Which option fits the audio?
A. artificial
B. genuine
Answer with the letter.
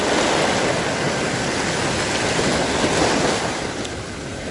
B